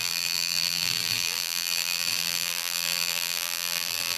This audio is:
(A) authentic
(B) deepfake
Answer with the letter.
B